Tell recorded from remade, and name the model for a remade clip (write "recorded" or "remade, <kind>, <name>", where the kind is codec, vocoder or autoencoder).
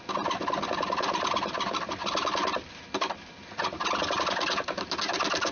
remade, vocoder, BigVGAN v2